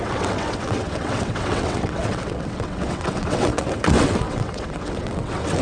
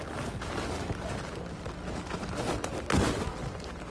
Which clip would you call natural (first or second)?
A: second